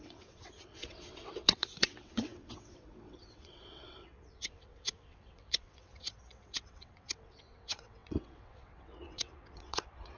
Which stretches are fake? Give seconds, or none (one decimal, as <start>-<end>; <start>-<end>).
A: 0.0-10.2